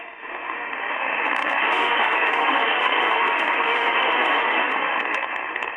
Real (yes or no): no